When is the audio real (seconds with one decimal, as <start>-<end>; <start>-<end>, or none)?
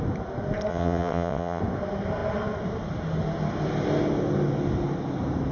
0.0-0.7; 1.6-5.5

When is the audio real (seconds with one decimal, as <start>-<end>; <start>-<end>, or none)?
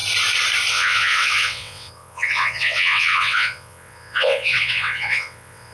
0.0-0.7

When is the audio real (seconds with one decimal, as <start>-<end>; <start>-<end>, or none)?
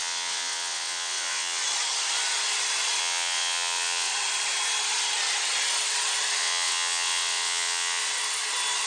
1.6-3.0; 4.1-6.4; 8.0-8.9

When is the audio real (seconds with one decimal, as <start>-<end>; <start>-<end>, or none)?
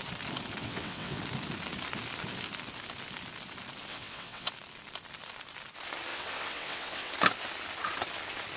0.0-0.6; 1.2-3.9; 4.5-6.1; 7.1-8.6